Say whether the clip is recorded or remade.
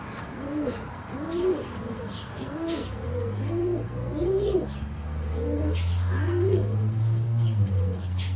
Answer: remade